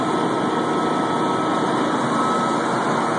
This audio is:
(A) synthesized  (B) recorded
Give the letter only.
B